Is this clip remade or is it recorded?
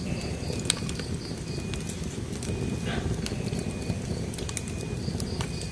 recorded